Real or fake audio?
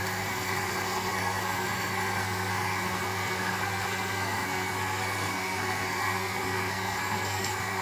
fake